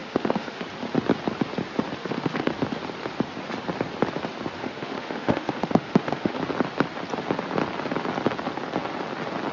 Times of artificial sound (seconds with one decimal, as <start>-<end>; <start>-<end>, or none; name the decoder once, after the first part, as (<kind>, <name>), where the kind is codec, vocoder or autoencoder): 0.0-0.6 (autoencoder, DAC-VAE); 2.0-2.5; 4.6-6.4